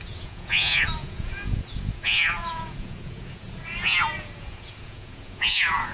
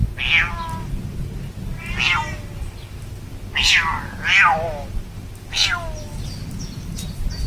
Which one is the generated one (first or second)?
first